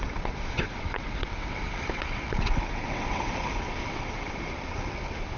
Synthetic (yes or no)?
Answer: yes